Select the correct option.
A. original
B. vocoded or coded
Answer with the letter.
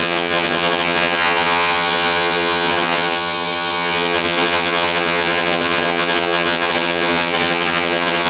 B